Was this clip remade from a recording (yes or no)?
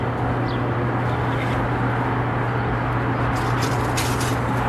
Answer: no